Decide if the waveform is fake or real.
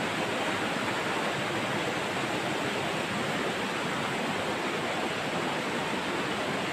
real